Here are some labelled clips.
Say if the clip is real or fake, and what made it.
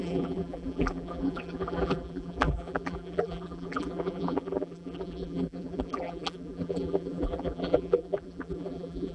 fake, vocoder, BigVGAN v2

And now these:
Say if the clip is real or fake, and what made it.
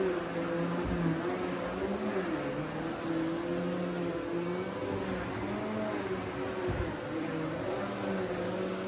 real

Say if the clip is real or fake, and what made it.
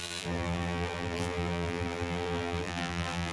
fake, vocoder, BigVGAN v2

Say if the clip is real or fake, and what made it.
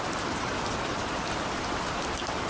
real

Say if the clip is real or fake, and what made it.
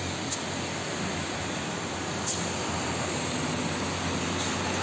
real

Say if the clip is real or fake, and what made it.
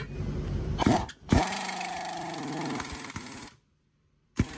fake, vocoder, BigVGAN v2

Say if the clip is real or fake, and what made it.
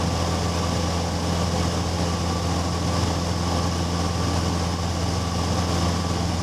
real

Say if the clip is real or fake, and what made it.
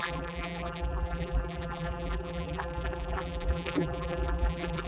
fake, vocoder, BigVGAN v2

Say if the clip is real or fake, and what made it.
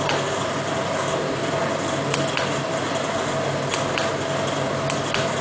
real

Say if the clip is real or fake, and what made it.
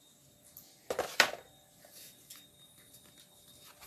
real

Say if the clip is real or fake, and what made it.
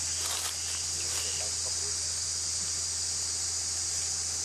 real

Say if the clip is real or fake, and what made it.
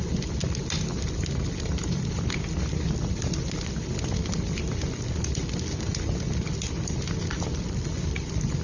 real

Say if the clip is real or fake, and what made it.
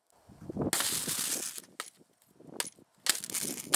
real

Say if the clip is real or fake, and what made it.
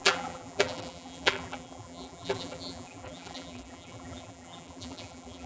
fake, vocoder, BigVGAN v2